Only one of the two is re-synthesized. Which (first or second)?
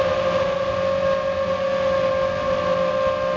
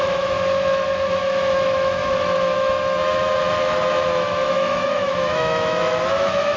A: second